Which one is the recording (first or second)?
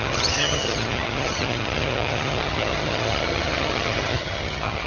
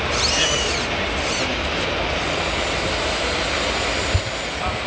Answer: second